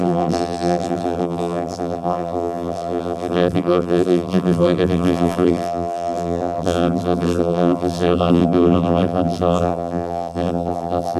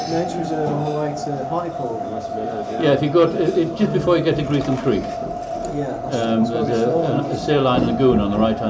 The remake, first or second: first